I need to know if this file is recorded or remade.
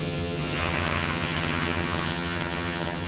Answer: remade